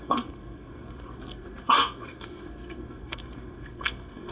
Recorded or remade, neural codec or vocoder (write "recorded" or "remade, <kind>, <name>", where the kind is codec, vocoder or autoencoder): remade, codec, SNAC